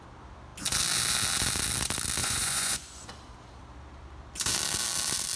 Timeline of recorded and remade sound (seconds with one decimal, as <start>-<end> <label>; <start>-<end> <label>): 0.0-2.2 recorded; 2.2-3.1 remade; 3.1-5.4 recorded